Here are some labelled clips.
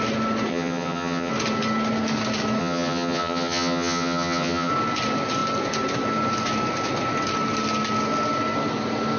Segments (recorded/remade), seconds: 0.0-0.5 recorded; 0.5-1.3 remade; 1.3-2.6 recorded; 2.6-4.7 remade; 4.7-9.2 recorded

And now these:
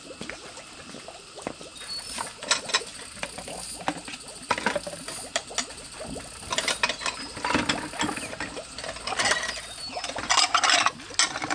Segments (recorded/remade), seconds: 0.0-11.5 recorded